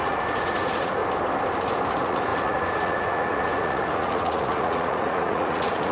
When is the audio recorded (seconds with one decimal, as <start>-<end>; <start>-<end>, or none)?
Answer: 1.0-1.9